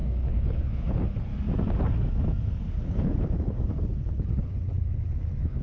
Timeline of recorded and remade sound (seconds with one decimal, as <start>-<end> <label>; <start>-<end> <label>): 0.0-1.3 remade; 1.3-2.5 recorded; 2.5-5.6 remade